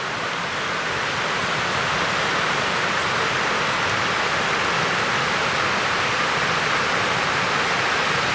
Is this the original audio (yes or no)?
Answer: yes